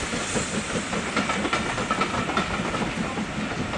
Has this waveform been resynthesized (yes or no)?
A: no